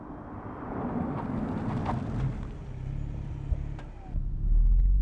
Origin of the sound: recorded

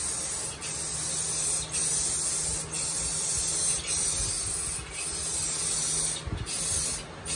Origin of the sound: recorded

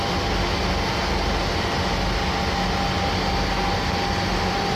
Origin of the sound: recorded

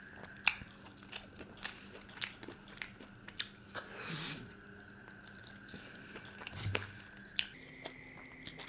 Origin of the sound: recorded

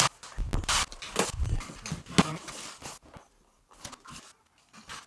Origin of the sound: recorded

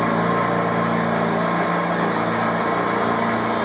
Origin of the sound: recorded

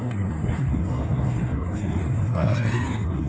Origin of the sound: remade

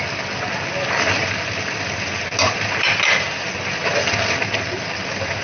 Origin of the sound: recorded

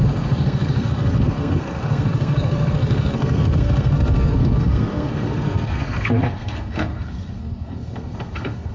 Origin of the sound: remade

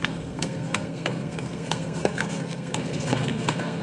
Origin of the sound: remade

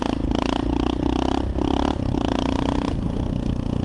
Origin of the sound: recorded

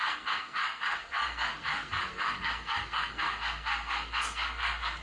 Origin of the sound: remade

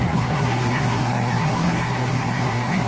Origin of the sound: remade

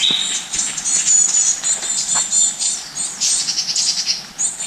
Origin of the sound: recorded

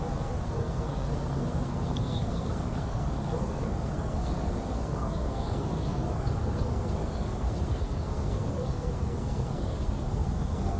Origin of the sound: remade